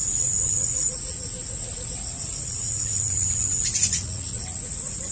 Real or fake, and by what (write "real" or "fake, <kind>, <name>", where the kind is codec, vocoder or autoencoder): fake, vocoder, Vocos